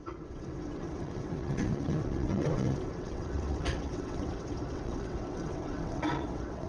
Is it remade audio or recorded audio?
remade